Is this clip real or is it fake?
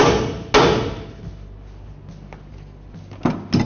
real